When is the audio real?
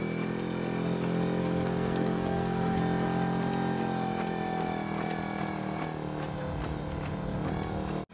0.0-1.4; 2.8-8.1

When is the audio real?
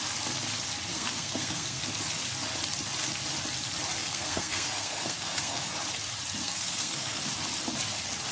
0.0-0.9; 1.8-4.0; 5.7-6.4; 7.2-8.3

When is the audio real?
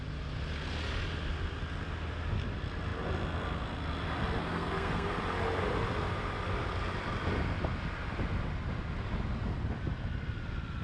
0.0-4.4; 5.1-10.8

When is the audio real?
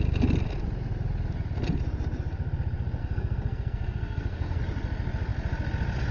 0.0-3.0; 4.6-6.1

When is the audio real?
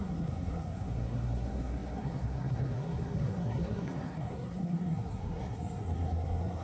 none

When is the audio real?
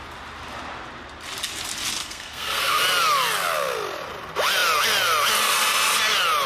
0.0-2.0; 2.8-6.5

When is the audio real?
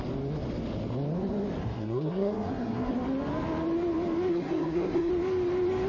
0.0-1.6; 2.9-4.3; 5.1-5.9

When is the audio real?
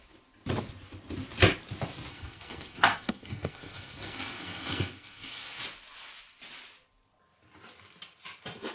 0.0-2.1; 5.6-8.7